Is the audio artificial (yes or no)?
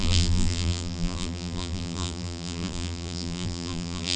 yes